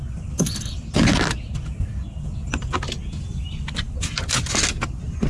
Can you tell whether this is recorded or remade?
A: recorded